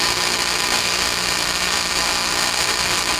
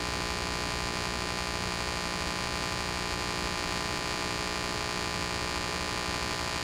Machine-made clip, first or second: first